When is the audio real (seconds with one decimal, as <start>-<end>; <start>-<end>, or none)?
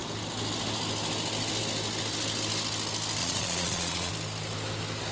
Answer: 0.0-3.2; 4.1-5.1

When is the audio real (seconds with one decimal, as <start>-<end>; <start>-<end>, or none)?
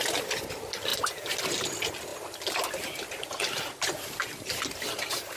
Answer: 0.0-0.9; 1.4-2.1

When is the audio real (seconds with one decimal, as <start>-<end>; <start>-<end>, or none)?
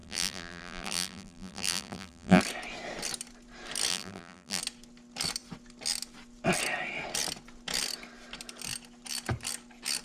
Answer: 2.4-3.9; 4.6-10.0